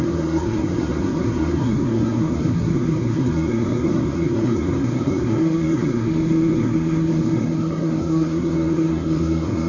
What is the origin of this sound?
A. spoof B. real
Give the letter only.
A